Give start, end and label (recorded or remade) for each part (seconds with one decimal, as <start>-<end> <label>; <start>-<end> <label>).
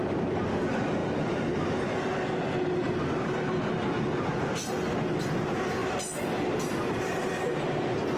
0.0-1.0 recorded; 1.0-1.8 remade; 1.8-8.2 recorded